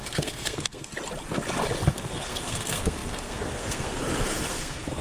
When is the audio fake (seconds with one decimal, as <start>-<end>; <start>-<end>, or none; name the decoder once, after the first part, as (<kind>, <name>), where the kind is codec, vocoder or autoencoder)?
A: 0.0-0.9 (codec, SNAC); 1.9-4.0; 4.5-5.0